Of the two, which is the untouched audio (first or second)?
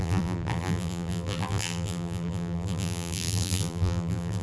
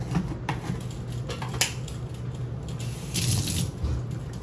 second